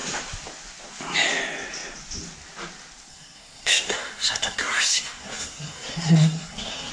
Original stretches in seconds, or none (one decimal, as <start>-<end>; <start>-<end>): 0.0-3.1